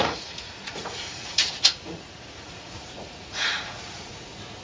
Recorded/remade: remade